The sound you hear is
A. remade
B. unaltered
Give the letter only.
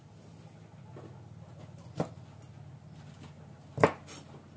B